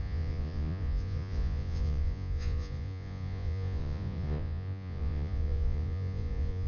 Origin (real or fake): fake